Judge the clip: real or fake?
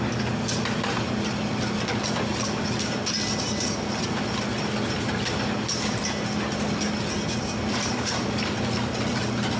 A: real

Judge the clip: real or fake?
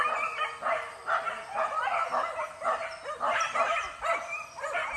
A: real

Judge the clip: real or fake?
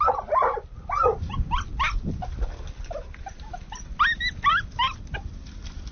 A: real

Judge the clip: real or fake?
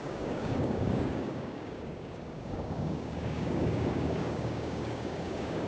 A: fake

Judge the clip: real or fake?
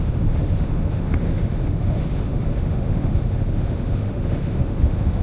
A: fake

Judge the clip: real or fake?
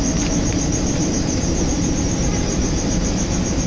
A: fake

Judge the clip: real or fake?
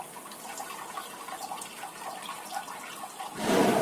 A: fake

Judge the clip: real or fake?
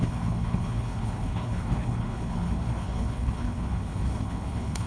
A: fake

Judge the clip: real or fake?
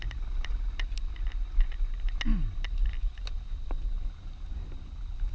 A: real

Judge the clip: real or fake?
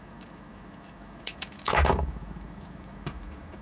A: fake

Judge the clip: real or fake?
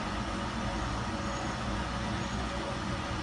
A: fake